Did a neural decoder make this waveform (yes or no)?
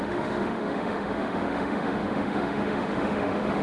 yes